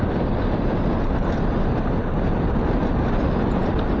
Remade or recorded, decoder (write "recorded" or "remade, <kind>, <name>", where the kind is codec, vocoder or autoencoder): recorded